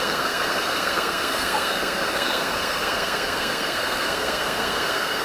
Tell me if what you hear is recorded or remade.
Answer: remade